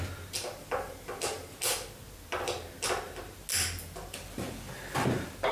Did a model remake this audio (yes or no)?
no